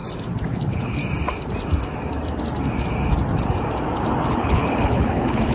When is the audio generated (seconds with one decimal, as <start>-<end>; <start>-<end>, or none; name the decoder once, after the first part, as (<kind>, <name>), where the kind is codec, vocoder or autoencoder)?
0.5-1.0 (codec, HILCodec); 4.3-5.5